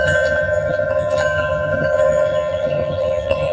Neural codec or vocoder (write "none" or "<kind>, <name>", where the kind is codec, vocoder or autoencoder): vocoder, HiFi-GAN